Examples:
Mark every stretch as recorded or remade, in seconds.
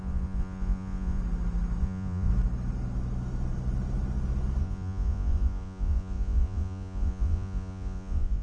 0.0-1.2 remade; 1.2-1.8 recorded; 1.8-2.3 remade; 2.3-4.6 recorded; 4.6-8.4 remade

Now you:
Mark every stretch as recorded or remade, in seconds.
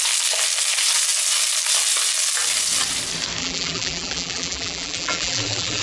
0.0-3.4 recorded; 3.4-5.8 remade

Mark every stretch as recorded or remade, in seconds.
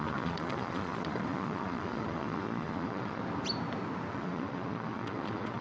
0.0-3.2 remade; 3.2-4.1 recorded; 4.1-5.6 remade